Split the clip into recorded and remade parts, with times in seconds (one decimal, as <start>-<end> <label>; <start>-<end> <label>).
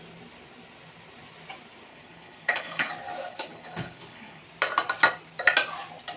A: 0.0-1.9 recorded; 1.9-2.9 remade; 2.9-3.3 recorded; 3.3-4.4 remade; 4.4-6.2 recorded